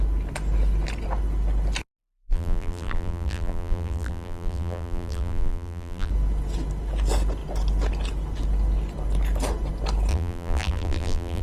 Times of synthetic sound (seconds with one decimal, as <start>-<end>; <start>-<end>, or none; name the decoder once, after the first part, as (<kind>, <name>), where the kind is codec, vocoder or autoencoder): 2.0-6.1 (vocoder, BigVGAN v2); 10.1-11.4